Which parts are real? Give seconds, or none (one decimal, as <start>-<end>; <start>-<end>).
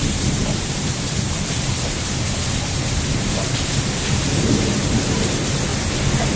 5.7-6.4